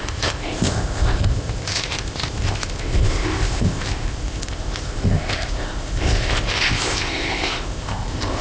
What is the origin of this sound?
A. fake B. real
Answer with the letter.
A